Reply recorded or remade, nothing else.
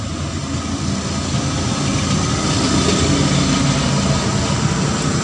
recorded